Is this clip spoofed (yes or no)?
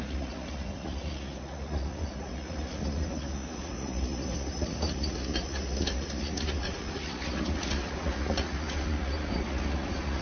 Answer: yes